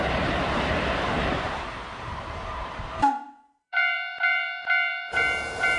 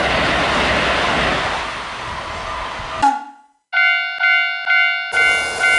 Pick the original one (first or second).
second